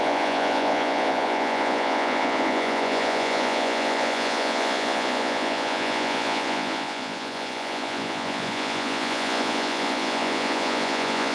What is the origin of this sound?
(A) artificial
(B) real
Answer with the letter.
A